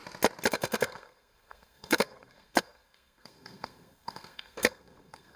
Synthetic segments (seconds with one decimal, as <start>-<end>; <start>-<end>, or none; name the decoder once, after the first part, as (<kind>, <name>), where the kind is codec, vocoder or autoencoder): 0.5-5.4 (codec, SNAC)